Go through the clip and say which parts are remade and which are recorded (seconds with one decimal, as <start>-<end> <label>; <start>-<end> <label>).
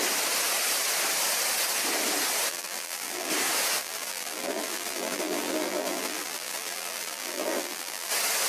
0.0-2.5 recorded; 2.5-3.3 remade; 3.3-3.8 recorded; 3.8-8.1 remade; 8.1-8.5 recorded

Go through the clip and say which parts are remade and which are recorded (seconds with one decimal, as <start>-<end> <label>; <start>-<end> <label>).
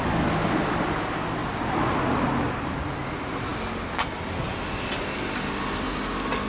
0.0-6.5 recorded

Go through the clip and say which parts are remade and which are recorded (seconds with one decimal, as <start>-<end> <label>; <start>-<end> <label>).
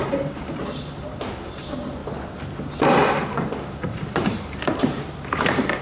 0.0-2.0 remade; 2.0-2.8 recorded; 2.8-5.8 remade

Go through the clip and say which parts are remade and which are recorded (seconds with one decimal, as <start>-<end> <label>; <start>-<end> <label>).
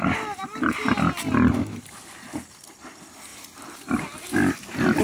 0.0-5.0 recorded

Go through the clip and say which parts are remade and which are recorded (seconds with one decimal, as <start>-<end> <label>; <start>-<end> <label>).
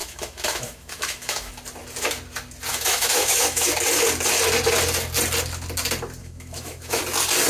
0.0-1.5 remade; 1.5-2.7 recorded; 2.7-3.7 remade; 3.7-6.2 recorded; 6.2-7.0 remade; 7.0-7.5 recorded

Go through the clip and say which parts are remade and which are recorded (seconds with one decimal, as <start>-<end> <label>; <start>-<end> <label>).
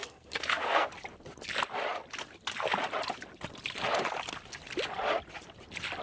0.0-0.9 remade; 0.9-6.0 recorded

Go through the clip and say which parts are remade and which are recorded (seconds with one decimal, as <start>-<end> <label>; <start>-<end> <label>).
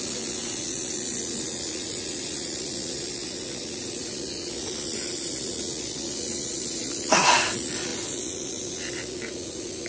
0.0-9.9 remade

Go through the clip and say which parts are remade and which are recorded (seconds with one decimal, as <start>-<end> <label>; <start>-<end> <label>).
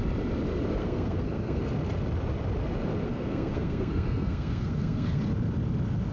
0.0-0.8 recorded; 0.8-1.6 remade; 1.6-3.1 recorded; 3.1-5.2 remade; 5.2-6.1 recorded